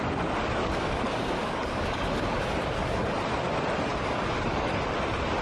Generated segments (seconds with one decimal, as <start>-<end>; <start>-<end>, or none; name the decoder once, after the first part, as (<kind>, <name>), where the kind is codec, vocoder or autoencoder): 0.6-3.1 (codec, DAC); 3.9-4.8